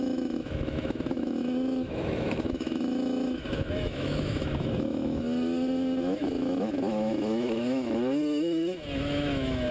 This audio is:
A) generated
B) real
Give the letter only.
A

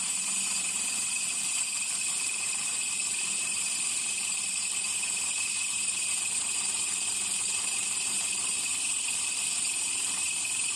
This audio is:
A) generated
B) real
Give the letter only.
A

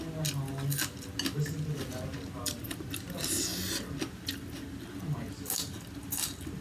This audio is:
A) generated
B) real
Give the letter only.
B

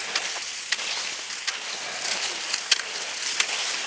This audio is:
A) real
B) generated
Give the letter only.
A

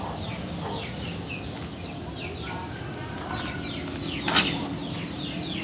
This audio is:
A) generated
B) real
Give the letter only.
B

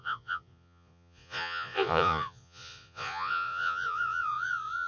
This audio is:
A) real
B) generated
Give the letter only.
B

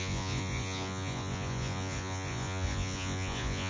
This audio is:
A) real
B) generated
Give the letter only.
B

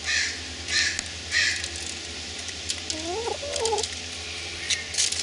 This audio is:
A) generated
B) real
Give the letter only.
B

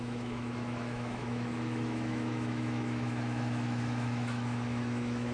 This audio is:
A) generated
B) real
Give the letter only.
A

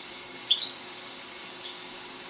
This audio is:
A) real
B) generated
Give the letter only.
B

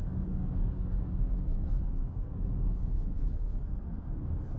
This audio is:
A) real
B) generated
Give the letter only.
B